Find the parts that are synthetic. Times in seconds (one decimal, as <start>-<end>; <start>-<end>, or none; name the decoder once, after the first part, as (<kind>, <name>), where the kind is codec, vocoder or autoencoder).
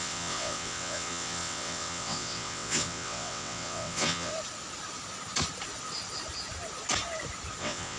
0.0-4.3 (vocoder, WaveNeXt); 7.6-8.0